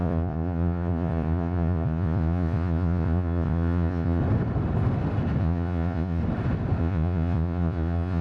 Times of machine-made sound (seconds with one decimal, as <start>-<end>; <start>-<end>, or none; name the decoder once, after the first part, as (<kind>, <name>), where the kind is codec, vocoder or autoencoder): 0.0-4.2 (vocoder, Vocos); 5.4-6.2; 6.8-8.2